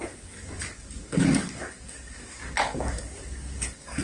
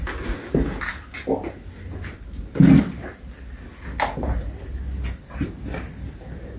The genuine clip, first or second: second